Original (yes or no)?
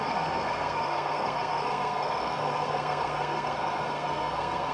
no